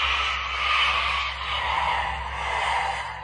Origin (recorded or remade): recorded